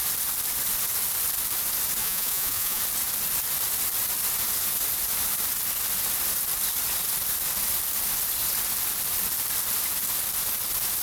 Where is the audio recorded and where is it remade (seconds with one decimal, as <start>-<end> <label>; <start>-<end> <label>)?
0.0-2.0 recorded; 2.0-2.8 remade; 2.8-11.0 recorded